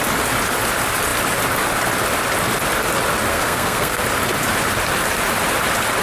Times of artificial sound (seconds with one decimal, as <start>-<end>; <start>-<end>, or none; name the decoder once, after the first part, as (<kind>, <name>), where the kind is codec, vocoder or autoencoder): 3.3-4.0 (codec, SNAC)